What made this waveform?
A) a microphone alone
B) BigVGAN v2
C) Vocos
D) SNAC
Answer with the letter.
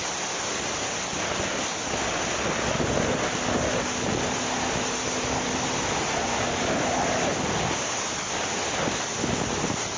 A